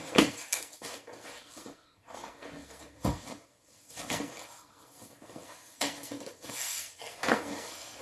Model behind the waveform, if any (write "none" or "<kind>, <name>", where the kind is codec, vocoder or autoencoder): codec, SNAC